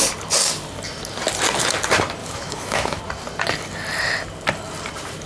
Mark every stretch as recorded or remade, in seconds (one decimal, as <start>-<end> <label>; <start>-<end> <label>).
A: 0.0-2.2 recorded; 2.2-3.0 remade; 3.0-5.3 recorded